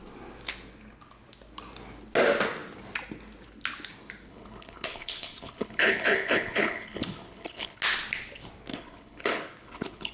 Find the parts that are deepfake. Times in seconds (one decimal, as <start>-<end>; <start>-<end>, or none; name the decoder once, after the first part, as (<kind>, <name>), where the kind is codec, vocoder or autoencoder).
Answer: 4.3-7.8 (codec, HILCodec); 8.7-10.1